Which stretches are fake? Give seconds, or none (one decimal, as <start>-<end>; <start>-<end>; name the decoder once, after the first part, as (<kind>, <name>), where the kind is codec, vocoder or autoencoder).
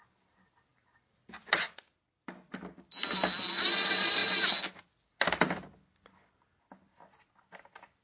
none